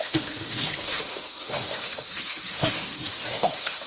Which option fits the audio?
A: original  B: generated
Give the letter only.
B